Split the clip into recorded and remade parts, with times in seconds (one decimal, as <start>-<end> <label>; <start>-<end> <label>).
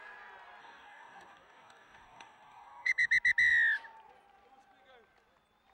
0.0-0.6 recorded; 0.6-3.1 remade; 3.1-5.7 recorded